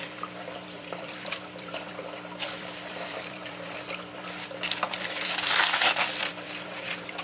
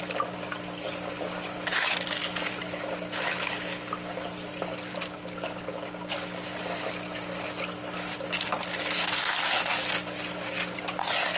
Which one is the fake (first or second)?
first